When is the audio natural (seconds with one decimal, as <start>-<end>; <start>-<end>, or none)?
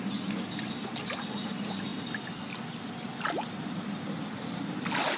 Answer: 0.0-5.2